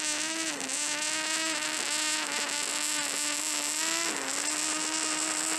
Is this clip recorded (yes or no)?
yes